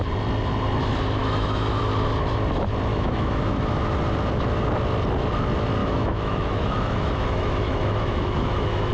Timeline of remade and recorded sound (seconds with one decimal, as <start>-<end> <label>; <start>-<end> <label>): 0.0-1.2 recorded; 1.2-1.8 remade; 1.8-2.9 recorded; 2.9-3.8 remade; 3.8-5.8 recorded; 5.8-8.9 remade